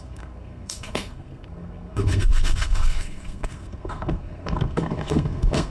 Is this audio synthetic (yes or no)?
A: yes